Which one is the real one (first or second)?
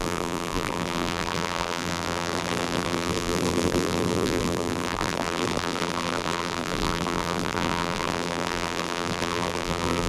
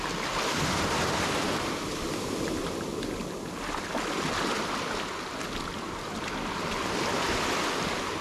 second